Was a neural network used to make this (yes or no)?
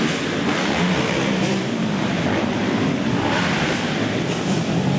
yes